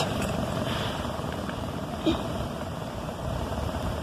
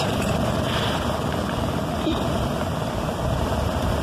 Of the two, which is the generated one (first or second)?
first